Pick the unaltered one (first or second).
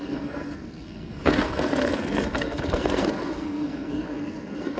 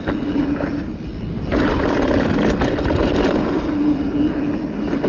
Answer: second